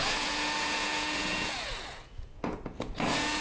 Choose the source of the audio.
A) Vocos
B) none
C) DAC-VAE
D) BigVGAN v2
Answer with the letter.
A